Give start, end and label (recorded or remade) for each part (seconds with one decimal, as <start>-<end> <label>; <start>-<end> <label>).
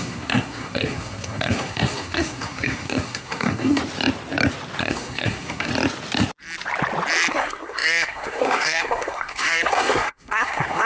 0.0-3.8 remade; 3.8-4.8 recorded; 4.8-5.7 remade; 5.7-7.3 recorded; 7.3-10.9 remade